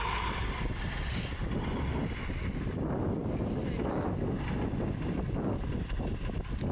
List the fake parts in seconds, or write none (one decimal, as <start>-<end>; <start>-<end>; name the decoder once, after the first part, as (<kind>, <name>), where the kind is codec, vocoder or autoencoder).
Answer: 0.0-3.2 (vocoder, BigVGAN v2)